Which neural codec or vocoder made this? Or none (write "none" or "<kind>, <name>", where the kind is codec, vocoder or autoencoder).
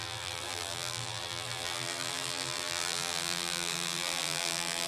vocoder, BigVGAN v2